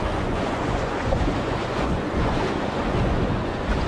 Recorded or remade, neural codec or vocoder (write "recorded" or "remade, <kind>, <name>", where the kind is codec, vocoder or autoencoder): remade, vocoder, Vocos